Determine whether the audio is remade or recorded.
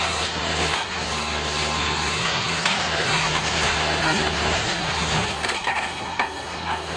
remade